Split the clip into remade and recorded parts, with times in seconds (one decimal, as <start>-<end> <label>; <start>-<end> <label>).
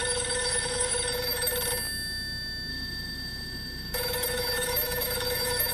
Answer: 0.0-1.5 remade; 1.5-2.7 recorded; 2.7-5.7 remade